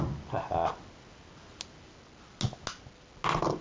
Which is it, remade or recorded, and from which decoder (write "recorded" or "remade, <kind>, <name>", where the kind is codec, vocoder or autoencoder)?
recorded